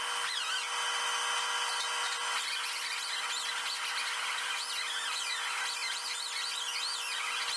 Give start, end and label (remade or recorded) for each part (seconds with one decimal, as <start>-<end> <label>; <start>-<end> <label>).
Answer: 0.0-7.6 recorded